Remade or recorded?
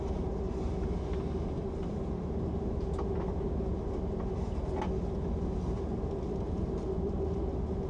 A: recorded